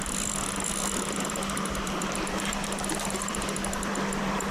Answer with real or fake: fake